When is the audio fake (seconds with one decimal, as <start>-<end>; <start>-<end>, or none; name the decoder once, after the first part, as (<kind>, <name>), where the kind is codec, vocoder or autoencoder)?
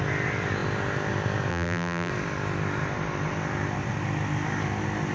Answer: 1.5-2.1 (vocoder, BigVGAN v2)